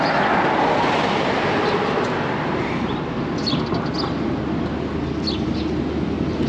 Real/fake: real